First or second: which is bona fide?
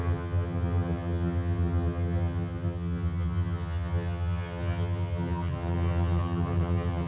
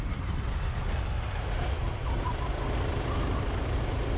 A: second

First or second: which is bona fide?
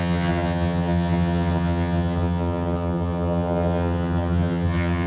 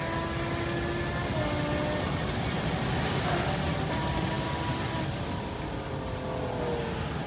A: second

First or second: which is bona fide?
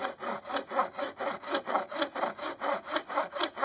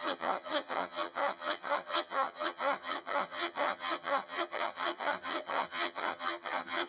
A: first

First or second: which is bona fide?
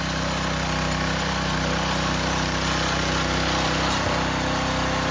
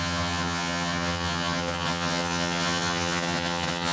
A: first